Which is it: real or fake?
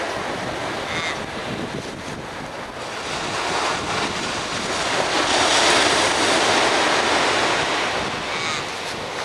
real